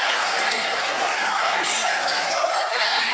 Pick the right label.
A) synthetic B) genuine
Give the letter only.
A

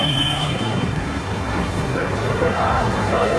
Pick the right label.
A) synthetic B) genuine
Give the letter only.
A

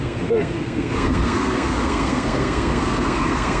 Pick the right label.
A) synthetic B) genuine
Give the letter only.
A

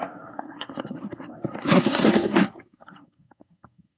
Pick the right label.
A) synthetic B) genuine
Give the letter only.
A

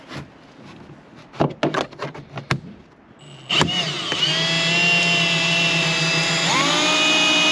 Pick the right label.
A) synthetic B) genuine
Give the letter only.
B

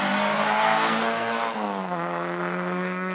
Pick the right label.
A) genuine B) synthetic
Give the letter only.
B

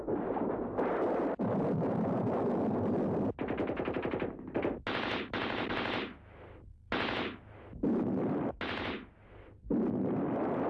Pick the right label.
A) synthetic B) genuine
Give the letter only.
B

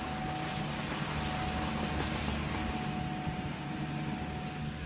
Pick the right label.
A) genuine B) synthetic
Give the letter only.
A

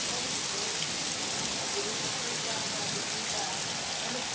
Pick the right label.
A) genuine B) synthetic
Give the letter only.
A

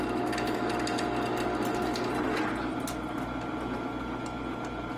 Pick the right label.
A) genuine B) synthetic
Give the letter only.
A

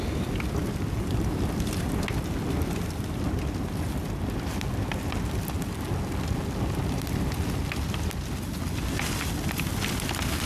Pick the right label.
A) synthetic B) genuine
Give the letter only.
B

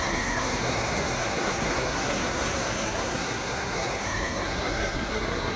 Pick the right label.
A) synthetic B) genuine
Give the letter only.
A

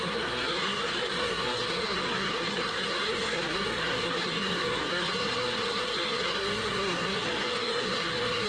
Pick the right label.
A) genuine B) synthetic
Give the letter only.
B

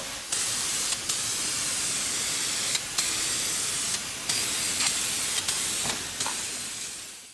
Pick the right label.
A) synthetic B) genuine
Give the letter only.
B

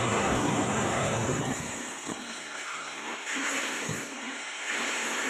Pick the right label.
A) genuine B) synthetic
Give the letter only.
B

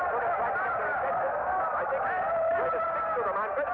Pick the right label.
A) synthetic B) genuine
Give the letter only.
B